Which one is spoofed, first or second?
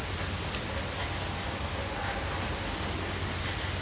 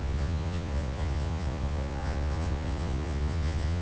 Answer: second